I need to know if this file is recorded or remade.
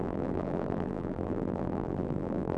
remade